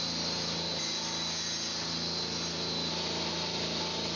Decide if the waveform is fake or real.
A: real